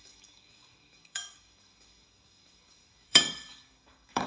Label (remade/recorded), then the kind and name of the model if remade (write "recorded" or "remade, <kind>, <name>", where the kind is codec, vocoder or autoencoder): remade, codec, DAC